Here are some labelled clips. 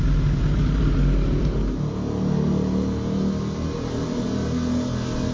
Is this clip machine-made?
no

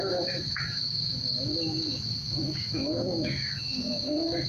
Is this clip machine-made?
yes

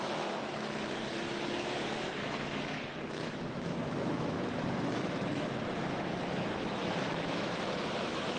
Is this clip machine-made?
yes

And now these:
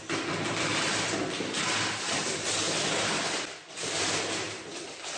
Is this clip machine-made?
no